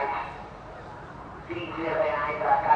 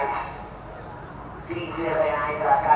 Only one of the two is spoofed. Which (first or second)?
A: first